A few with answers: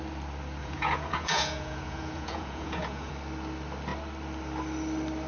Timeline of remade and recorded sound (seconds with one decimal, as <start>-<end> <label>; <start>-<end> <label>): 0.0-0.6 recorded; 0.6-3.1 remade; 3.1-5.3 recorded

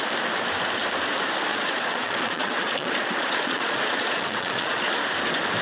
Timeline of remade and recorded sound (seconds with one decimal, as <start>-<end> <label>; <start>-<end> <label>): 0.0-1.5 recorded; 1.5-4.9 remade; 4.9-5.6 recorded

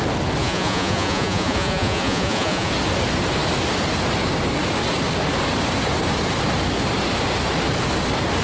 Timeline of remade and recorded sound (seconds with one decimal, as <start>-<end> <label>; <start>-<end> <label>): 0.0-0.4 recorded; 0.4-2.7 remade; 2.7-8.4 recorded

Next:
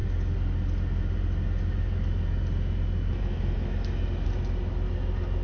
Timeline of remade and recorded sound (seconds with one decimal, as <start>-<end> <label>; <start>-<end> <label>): 0.0-5.4 recorded

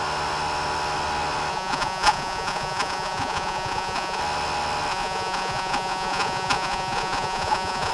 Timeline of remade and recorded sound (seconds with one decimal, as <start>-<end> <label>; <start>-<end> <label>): 0.0-1.5 recorded; 1.5-4.2 remade; 4.2-4.9 recorded; 4.9-7.9 remade

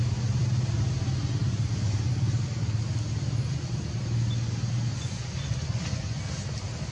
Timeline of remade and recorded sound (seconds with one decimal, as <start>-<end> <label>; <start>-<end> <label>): 0.0-4.9 recorded; 4.9-6.2 remade; 6.2-6.9 recorded